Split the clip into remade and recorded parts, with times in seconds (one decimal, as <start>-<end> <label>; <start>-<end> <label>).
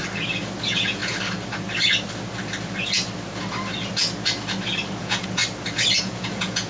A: 0.0-0.6 recorded; 0.6-1.0 remade; 1.0-5.0 recorded; 5.0-5.4 remade; 5.4-6.0 recorded; 6.0-6.7 remade